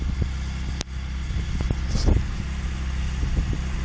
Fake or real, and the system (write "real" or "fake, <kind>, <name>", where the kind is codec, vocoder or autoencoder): real